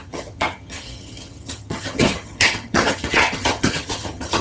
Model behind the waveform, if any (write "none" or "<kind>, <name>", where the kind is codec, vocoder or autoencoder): vocoder, HiFi-GAN